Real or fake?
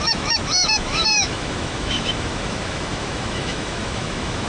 fake